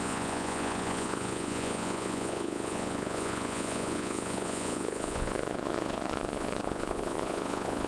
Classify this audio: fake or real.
fake